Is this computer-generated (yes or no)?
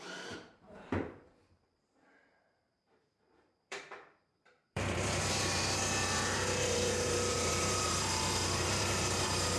yes